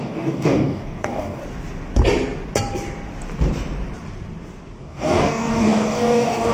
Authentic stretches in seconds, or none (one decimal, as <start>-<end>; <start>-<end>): 1.4-4.8